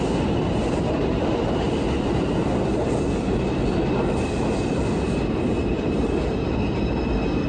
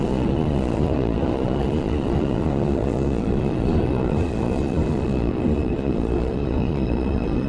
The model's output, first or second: second